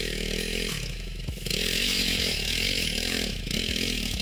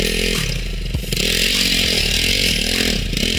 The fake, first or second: first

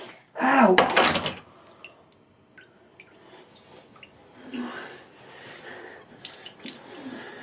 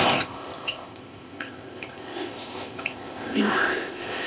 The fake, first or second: second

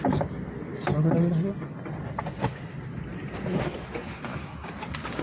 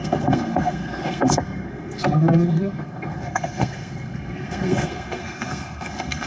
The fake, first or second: second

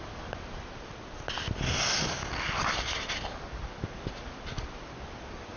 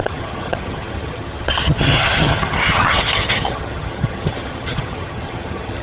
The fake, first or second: second